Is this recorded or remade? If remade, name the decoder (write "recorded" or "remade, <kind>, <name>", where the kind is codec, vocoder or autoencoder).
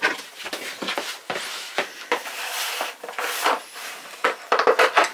remade, vocoder, BigVGAN v2